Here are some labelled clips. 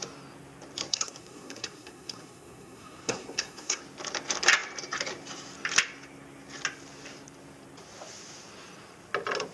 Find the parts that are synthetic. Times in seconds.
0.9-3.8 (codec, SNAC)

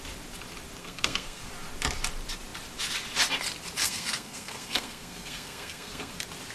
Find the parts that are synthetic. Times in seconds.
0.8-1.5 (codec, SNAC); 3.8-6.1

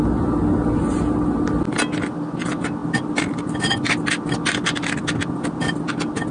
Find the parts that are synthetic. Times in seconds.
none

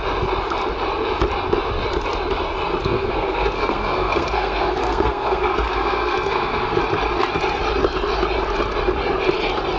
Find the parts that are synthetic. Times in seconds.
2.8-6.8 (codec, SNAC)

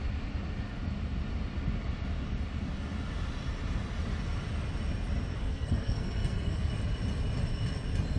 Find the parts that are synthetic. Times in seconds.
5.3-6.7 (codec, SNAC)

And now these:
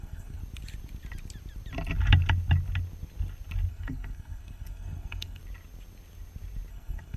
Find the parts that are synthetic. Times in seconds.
0.0-0.4 (codec, SNAC); 3.7-5.4; 6.7-7.2

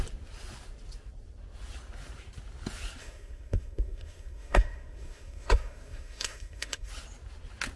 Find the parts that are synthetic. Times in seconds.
3.0-6.9 (codec, SNAC)

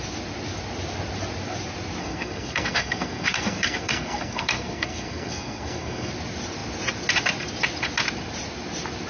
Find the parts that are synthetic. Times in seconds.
2.0-6.1 (codec, SNAC)